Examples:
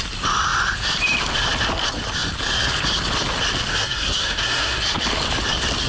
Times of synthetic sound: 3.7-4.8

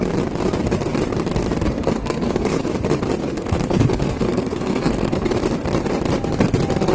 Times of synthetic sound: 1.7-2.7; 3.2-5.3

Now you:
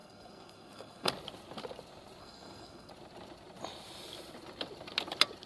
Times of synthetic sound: 0.0-1.1; 2.2-2.9

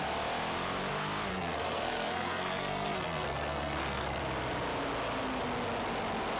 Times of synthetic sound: 1.3-4.2

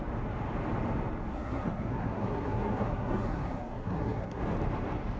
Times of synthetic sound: 1.3-4.4

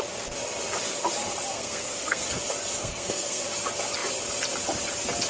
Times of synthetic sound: 1.5-2.3; 2.8-3.4

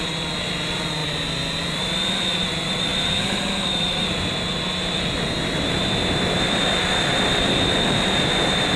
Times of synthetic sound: none

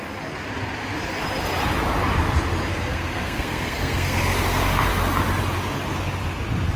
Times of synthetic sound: 2.7-4.3